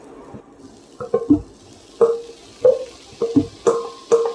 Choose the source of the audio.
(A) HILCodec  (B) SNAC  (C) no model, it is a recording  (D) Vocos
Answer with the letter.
C